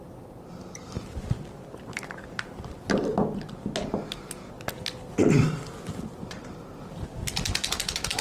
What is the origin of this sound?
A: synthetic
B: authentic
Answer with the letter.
B